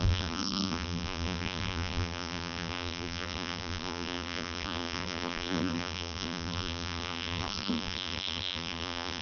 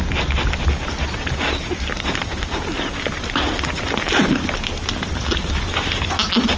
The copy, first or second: first